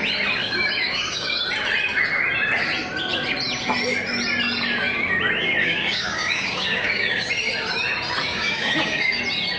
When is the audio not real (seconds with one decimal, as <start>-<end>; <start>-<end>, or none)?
0.4-1.4; 5.6-7.3; 8.3-9.2